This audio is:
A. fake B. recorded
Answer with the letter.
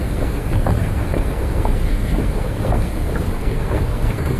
A